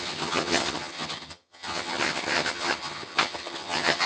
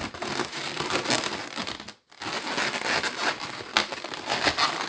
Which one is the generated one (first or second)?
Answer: first